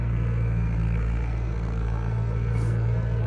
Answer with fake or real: fake